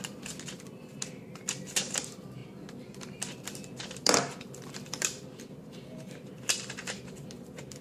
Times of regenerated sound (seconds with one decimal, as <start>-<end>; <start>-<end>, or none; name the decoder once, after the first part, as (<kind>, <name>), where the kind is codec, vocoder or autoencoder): 0.0-7.8 (vocoder, BigVGAN v2)